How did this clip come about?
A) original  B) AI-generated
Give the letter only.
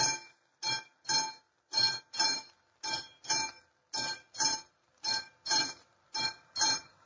A